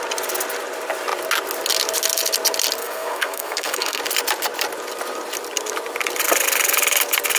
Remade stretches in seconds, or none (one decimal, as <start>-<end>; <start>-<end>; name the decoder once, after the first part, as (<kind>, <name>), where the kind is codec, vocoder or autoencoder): 2.8-4.0 (codec, SNAC)